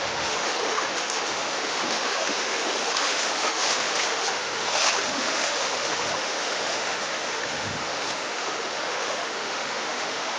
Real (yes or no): no